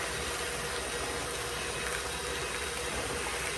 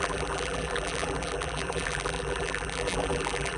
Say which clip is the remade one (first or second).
second